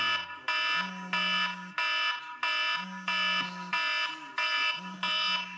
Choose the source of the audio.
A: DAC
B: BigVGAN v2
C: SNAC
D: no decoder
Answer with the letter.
D